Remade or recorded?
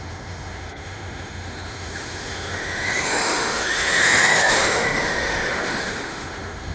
remade